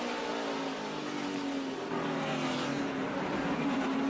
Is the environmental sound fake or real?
real